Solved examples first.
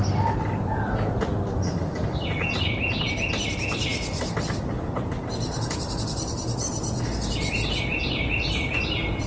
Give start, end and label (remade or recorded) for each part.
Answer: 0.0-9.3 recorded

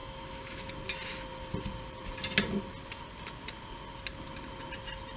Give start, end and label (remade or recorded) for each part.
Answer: 0.0-0.7 remade; 0.7-5.2 recorded

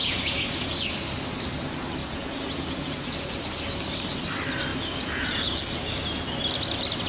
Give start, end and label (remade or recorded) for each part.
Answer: 0.0-0.9 remade; 0.9-2.0 recorded; 2.0-3.4 remade; 3.4-4.7 recorded; 4.7-5.5 remade; 5.5-7.1 recorded

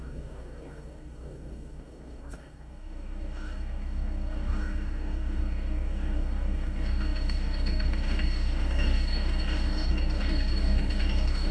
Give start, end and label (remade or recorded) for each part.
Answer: 0.0-11.5 remade

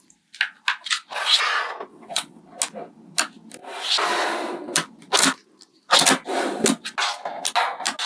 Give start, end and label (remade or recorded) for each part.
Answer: 0.0-1.9 recorded; 1.9-2.4 remade; 2.4-8.1 recorded

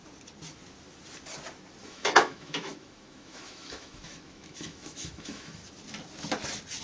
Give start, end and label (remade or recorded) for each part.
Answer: 0.0-1.8 recorded; 1.8-5.6 remade; 5.6-6.8 recorded